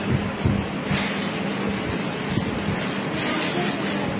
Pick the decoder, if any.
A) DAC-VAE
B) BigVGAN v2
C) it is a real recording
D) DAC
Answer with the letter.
C